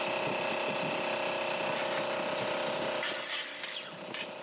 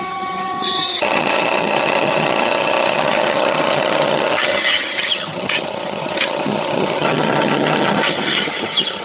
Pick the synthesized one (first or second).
second